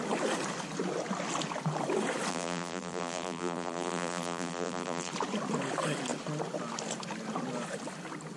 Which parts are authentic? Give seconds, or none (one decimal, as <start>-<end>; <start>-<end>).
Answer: 0.0-2.3; 5.1-8.4

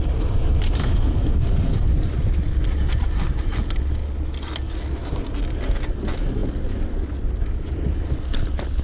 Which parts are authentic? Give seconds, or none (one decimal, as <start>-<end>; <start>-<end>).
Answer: 0.0-0.8; 1.9-8.8

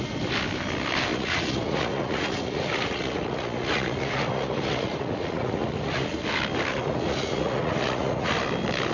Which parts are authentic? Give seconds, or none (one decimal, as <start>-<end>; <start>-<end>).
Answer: 0.0-1.1; 6.3-6.7; 8.3-8.9

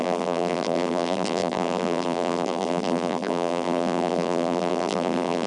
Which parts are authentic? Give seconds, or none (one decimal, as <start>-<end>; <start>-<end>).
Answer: none

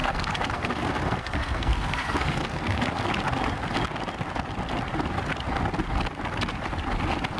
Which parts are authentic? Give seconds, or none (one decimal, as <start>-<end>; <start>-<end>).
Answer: 2.8-7.4

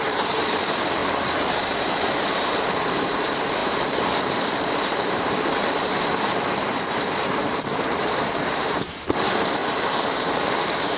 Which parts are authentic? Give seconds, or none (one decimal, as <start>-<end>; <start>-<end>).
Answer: 9.6-10.3